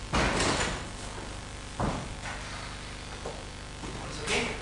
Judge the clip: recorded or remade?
recorded